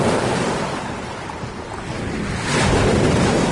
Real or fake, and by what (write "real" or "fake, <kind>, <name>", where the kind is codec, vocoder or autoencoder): real